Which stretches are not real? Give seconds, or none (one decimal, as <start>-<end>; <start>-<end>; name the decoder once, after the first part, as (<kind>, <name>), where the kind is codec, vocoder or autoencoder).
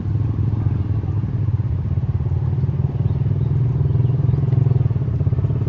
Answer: none